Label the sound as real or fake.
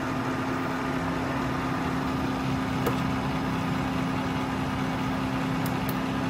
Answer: real